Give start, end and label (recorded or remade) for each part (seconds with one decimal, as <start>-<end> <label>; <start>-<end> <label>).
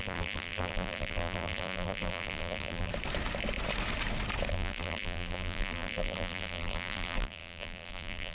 0.0-2.9 remade; 2.9-4.5 recorded; 4.5-8.3 remade